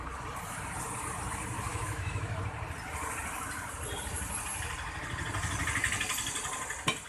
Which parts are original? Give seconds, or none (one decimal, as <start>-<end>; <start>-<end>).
0.0-1.7; 2.4-7.1